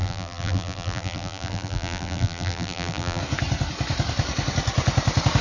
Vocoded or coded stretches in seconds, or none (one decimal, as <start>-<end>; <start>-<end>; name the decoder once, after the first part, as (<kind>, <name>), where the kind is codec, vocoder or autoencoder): 0.0-3.2 (vocoder, BigVGAN v2)